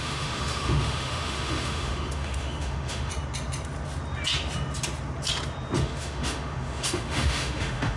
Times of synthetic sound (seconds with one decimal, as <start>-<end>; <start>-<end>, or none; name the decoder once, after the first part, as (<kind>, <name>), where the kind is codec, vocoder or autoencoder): 0.0-3.1 (autoencoder, DAC-VAE); 5.8-8.0